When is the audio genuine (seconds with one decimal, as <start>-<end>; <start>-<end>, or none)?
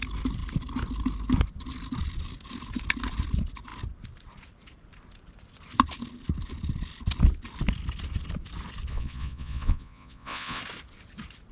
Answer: 0.0-8.9; 10.6-11.5